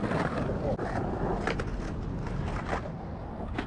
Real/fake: real